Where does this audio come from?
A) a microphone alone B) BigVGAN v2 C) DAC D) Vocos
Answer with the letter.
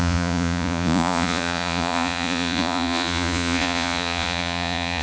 D